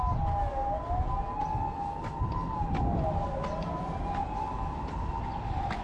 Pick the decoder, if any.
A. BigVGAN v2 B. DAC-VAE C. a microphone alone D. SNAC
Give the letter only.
C